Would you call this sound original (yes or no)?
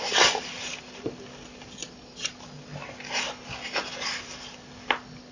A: yes